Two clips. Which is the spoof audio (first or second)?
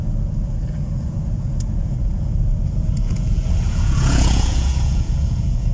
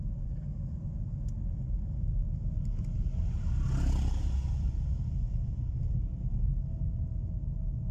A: first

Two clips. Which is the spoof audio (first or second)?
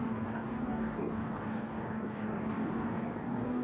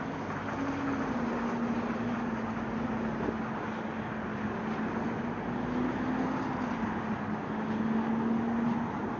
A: first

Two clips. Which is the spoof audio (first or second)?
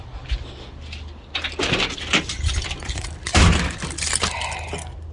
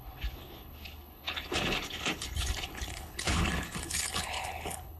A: second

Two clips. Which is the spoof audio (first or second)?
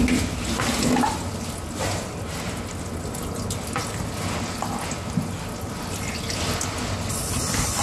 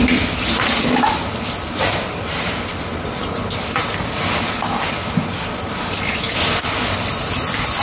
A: second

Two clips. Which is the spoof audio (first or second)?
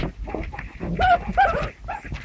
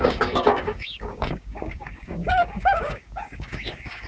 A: second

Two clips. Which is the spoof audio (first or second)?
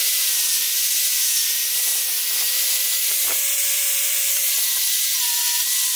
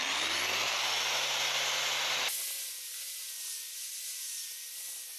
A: first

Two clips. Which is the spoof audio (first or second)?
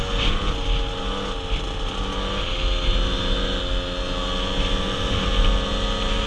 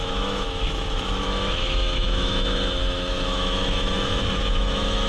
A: second